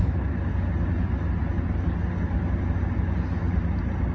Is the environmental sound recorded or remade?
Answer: recorded